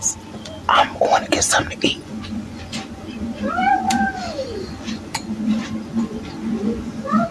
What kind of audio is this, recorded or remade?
remade